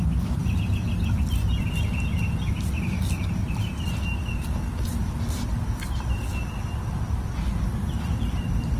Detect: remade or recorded recorded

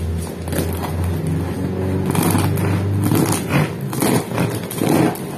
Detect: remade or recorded recorded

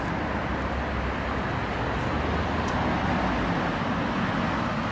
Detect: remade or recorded recorded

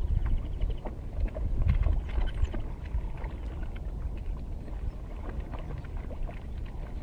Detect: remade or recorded recorded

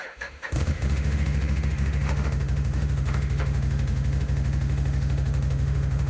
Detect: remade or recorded remade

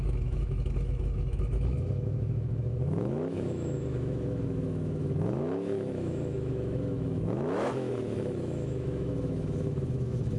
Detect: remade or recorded remade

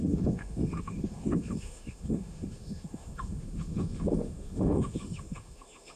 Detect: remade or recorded remade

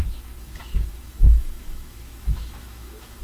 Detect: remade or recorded remade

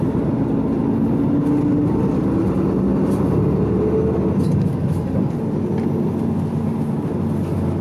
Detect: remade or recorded recorded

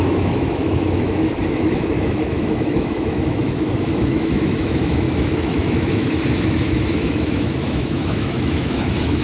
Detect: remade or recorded remade